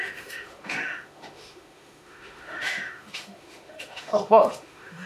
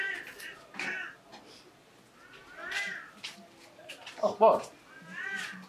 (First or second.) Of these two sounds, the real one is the second